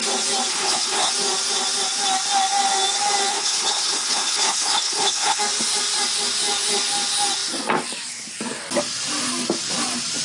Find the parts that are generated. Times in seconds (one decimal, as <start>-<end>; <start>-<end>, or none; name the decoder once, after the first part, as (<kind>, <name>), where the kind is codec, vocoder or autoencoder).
0.5-1.1 (codec, HILCodec); 3.3-5.4